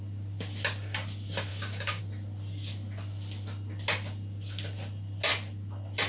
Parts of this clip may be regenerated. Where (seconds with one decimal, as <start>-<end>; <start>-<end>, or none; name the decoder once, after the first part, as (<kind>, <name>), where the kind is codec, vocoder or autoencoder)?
1.5-2.0 (codec, DAC)